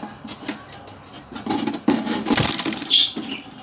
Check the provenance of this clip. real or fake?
fake